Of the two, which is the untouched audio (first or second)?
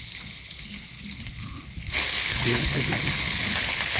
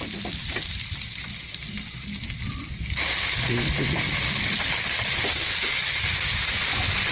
second